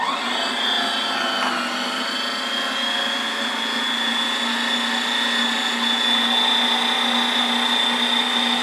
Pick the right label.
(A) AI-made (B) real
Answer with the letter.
B